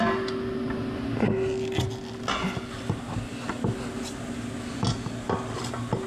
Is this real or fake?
real